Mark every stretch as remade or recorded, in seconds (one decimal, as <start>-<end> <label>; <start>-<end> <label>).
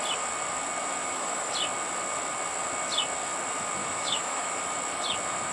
0.0-1.0 recorded; 1.0-1.5 remade; 1.5-3.8 recorded; 3.8-4.6 remade; 4.6-5.5 recorded